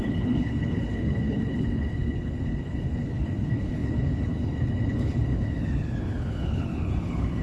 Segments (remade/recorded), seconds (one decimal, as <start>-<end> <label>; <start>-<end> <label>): 0.0-7.4 remade